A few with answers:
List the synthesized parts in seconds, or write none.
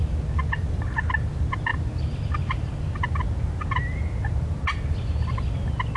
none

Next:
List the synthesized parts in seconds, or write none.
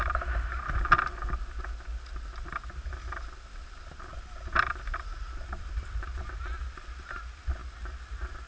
none